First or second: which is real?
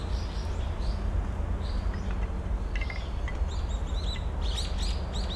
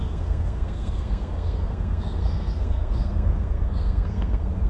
first